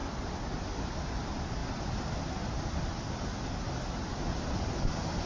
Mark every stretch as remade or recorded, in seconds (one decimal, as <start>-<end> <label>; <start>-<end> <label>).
0.0-5.3 recorded

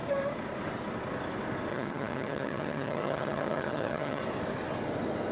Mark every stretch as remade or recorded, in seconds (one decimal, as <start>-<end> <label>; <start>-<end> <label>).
0.0-1.7 recorded; 1.7-4.2 remade; 4.2-5.3 recorded

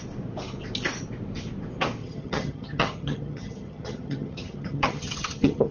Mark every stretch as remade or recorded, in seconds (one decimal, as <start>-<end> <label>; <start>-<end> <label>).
0.0-2.0 recorded; 2.0-5.7 remade